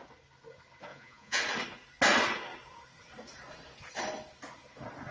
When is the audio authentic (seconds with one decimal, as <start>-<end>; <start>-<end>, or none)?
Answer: 0.0-0.9; 1.4-5.1